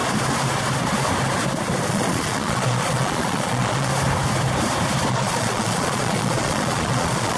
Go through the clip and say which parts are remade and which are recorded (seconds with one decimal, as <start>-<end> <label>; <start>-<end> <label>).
0.0-1.9 recorded; 1.9-3.9 remade; 3.9-5.1 recorded; 5.1-7.4 remade